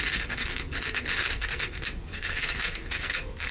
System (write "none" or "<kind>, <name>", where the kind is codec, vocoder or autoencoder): codec, SNAC